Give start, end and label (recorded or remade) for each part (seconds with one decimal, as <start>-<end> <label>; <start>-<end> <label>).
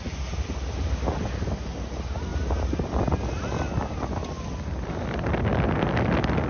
0.0-6.5 recorded